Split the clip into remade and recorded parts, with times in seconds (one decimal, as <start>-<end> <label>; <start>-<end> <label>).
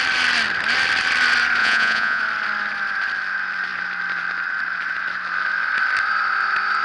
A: 0.0-1.6 recorded; 1.6-2.2 remade; 2.2-6.8 recorded